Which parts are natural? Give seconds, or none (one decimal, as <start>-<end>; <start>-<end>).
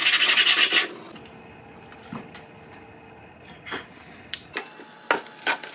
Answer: 0.0-5.7